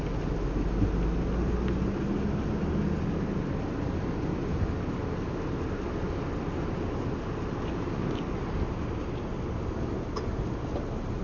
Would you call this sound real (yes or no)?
yes